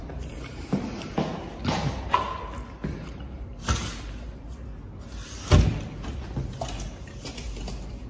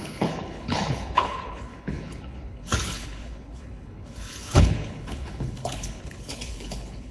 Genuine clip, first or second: first